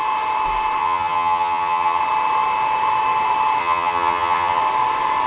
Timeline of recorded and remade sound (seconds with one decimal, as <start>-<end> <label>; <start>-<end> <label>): 0.0-0.8 recorded; 0.8-2.0 remade; 2.0-3.6 recorded; 3.6-4.6 remade; 4.6-5.3 recorded